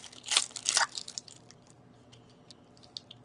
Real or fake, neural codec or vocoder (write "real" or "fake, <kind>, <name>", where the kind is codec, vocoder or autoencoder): real